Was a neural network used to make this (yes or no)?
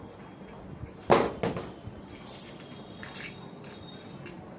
no